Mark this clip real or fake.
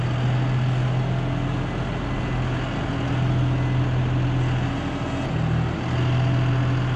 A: real